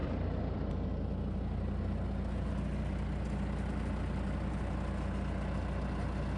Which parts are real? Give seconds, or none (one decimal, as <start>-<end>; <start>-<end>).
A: 0.7-6.4